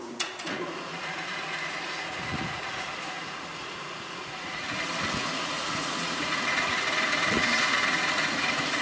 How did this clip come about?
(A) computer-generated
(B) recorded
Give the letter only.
A